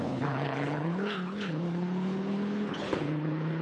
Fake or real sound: fake